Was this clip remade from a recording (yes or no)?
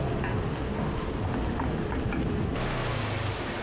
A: no